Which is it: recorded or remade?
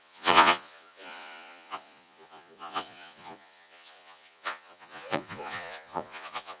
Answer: remade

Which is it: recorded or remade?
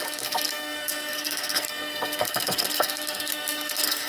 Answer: remade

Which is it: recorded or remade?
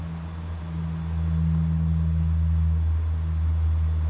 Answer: recorded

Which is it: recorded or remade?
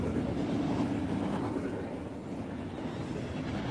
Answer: recorded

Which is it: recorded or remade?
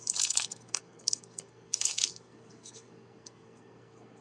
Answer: remade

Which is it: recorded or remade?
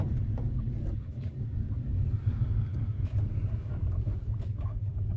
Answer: remade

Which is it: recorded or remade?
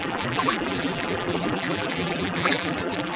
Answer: remade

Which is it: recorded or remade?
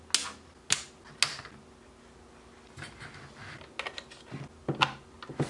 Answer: recorded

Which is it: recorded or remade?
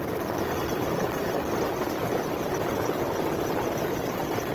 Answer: recorded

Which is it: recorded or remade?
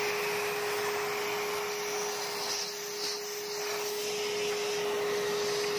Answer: recorded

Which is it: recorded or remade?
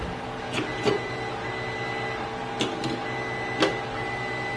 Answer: recorded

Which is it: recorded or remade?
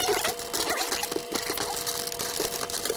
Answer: recorded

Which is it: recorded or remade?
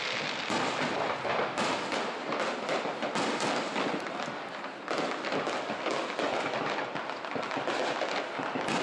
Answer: recorded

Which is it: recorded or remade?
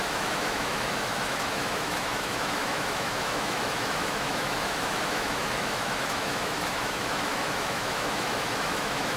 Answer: remade